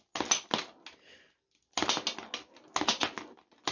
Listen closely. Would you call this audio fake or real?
real